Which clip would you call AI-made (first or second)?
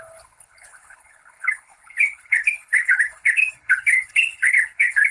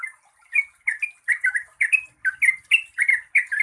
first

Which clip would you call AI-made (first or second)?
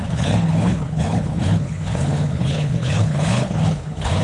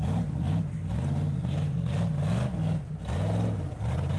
first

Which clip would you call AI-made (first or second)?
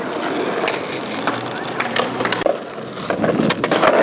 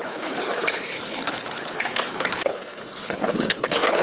second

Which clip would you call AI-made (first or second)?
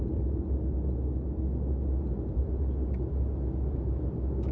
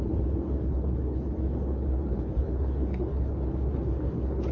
second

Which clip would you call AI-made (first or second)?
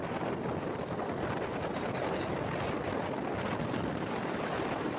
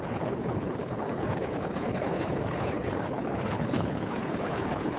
second